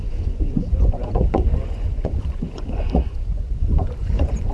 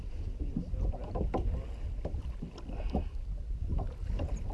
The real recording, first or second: second